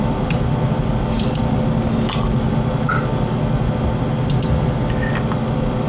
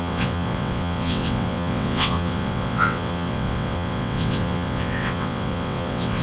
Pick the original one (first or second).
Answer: first